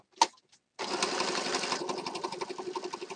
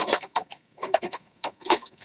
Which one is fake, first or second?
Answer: second